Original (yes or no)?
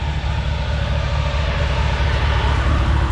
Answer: yes